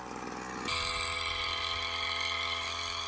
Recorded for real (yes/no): yes